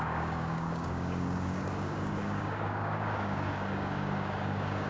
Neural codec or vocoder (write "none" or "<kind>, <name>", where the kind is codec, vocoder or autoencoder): codec, DAC